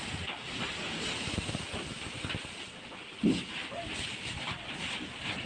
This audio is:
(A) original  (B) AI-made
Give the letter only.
A